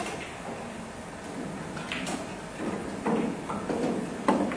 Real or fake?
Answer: real